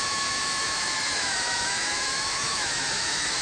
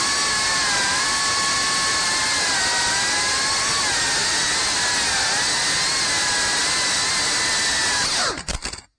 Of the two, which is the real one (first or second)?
second